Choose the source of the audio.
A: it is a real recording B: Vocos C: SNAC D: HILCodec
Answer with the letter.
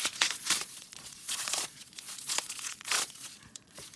B